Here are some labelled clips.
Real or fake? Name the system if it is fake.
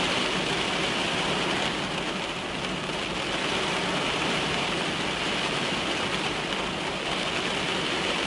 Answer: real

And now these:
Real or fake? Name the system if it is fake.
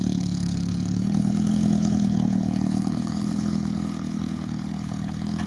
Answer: fake, codec, HILCodec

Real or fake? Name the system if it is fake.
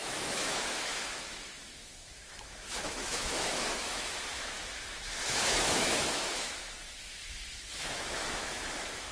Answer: fake, autoencoder, DAC-VAE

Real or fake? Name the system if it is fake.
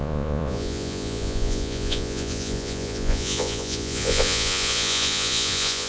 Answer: fake, vocoder, Vocos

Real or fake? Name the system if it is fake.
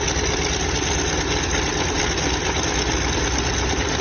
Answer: real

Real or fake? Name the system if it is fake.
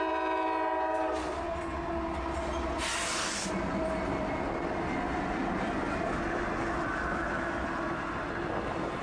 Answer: real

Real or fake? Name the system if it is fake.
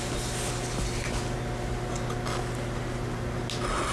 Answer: real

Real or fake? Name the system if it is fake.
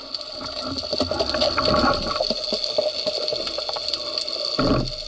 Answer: real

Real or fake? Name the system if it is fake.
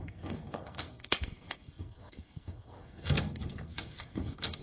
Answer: fake, codec, SNAC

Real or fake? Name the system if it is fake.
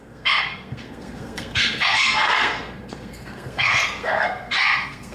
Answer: fake, codec, SNAC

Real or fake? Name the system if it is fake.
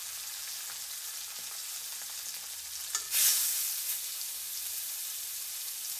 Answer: real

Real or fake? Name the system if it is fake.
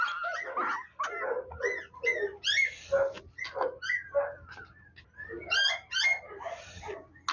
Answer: real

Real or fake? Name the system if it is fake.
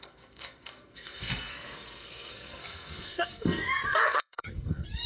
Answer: fake, codec, SNAC